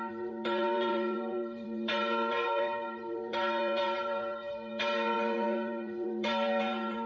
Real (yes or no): no